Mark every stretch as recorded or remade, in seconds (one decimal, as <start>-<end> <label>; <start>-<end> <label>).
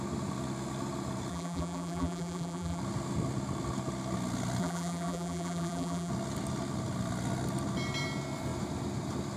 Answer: 0.0-1.3 recorded; 1.3-2.8 remade; 2.8-4.6 recorded; 4.6-6.1 remade; 6.1-9.4 recorded